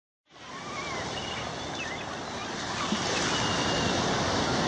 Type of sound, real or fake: real